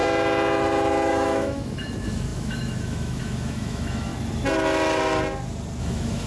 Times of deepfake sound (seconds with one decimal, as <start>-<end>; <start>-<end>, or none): 1.1-4.1; 5.8-6.3

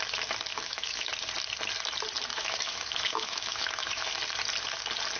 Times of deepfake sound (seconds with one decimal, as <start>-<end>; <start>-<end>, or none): 0.5-1.1; 2.3-4.1

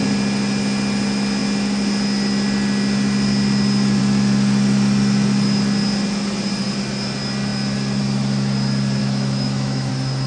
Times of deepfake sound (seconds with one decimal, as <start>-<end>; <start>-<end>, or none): 9.0-9.9

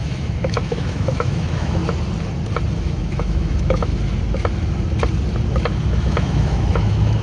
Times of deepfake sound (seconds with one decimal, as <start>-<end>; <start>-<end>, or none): 0.0-1.8; 2.8-3.9; 6.0-7.2

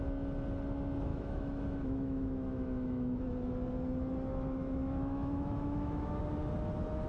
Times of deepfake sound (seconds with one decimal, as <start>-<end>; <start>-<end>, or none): 1.1-3.2; 4.6-6.2

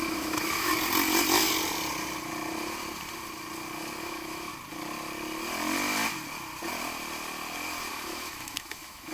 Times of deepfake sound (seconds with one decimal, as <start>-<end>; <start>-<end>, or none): 0.0-0.7; 4.0-4.5; 7.9-9.1